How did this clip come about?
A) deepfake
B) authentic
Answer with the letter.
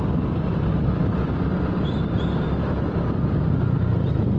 B